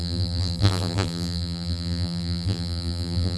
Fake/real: fake